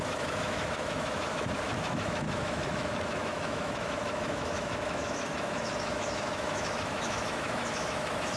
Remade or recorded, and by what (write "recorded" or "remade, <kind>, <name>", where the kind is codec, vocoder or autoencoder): remade, autoencoder, DAC-VAE